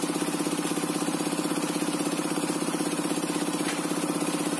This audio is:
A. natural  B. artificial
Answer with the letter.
B